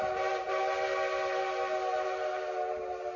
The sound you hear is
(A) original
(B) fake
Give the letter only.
A